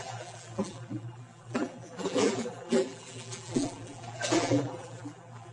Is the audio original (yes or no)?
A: no